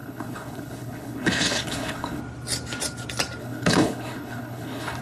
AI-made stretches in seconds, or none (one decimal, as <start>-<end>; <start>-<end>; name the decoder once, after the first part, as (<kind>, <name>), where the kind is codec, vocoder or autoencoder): 0.0-2.2 (codec, HILCodec); 3.4-5.0